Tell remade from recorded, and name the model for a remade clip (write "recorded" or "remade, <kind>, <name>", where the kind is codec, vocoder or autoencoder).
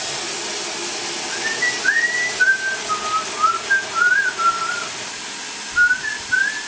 recorded